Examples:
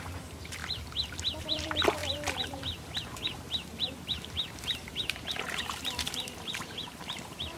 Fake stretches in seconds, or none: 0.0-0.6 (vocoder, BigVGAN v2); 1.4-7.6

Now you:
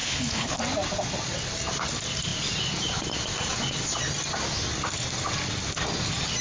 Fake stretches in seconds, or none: 0.0-0.6 (codec, HILCodec)

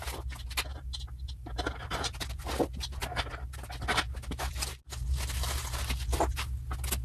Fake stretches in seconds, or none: 0.7-2.2 (vocoder, BigVGAN v2)